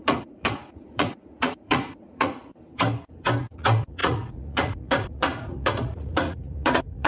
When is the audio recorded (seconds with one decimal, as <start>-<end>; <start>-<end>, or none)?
2.5-3.4